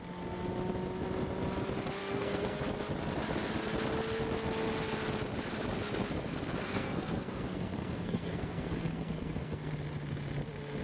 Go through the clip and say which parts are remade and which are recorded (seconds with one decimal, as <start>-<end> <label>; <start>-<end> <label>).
0.0-2.0 recorded; 2.0-2.6 remade; 2.6-6.6 recorded; 6.6-9.7 remade; 9.7-10.8 recorded